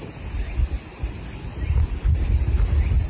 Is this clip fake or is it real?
real